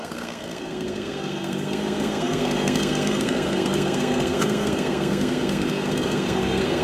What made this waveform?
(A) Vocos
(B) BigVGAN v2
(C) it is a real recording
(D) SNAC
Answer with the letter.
D